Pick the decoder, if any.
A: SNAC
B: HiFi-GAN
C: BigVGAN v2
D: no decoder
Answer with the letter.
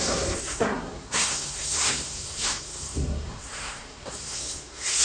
A